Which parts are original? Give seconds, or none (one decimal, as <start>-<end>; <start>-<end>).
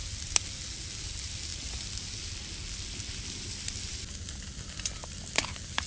0.0-5.9